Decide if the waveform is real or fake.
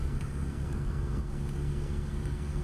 fake